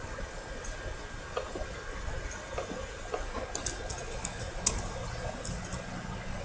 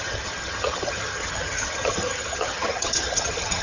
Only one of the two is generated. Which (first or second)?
second